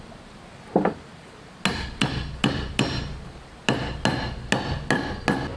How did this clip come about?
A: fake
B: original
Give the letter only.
B